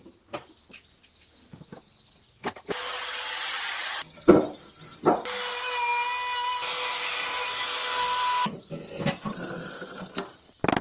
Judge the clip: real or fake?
real